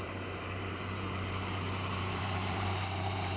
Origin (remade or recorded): remade